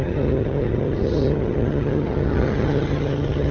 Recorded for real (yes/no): no